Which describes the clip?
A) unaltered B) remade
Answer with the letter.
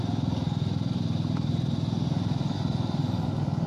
A